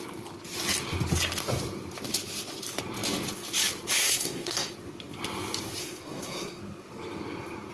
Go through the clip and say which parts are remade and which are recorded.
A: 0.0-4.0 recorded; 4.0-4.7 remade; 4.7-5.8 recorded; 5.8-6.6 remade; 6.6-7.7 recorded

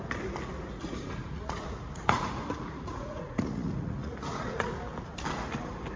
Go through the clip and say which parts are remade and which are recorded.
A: 0.0-1.2 recorded; 1.2-4.8 remade; 4.8-6.0 recorded